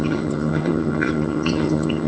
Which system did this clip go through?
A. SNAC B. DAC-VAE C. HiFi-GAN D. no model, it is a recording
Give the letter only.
C